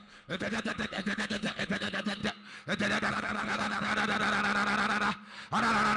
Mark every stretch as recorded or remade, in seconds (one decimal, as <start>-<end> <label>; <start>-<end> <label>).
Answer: 0.0-2.2 remade; 2.2-3.1 recorded; 3.1-3.9 remade; 3.9-6.0 recorded